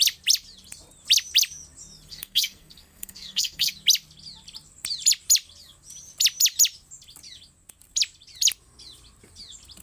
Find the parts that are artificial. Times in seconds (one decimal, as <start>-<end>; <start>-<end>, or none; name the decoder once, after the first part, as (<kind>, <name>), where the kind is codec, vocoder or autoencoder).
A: 2.1-3.7 (codec, SNAC)